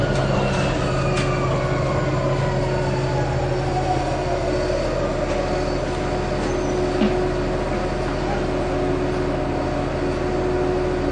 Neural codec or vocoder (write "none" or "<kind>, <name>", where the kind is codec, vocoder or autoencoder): none